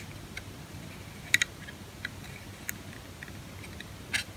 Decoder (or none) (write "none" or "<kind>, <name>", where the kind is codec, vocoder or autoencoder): none